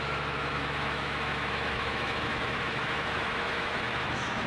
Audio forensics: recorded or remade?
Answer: remade